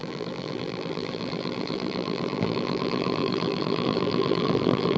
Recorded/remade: remade